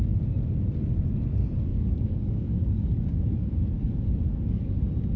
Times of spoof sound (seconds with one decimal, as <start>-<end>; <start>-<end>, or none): 1.7-4.8